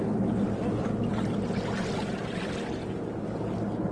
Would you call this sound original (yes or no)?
yes